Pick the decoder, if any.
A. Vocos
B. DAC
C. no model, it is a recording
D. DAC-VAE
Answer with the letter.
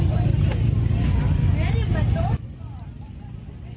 C